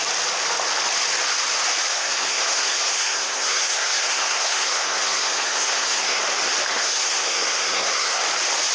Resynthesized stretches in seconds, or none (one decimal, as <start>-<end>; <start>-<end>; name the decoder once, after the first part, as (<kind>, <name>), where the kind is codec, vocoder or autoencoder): 1.9-6.2 (codec, SNAC); 6.7-8.2